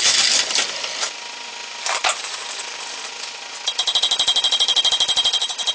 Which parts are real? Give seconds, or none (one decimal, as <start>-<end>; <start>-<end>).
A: 0.0-5.7